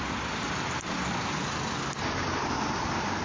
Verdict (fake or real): real